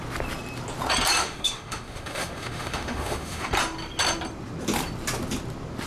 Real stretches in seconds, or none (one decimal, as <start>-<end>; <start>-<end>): 0.0-1.2; 3.5-5.9